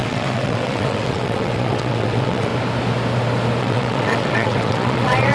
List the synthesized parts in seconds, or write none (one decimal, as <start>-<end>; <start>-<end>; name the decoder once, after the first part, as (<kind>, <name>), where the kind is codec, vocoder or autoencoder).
0.0-2.5 (vocoder, WaveNeXt); 3.6-5.3